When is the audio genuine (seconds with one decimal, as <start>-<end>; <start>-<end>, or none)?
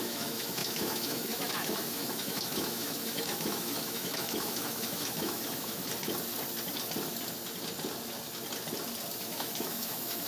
5.9-9.2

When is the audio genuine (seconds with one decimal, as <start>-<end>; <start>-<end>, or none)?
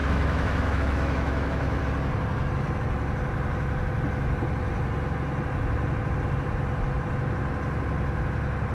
1.8-8.7